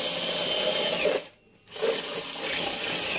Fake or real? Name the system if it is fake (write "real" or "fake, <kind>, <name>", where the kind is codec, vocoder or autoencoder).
real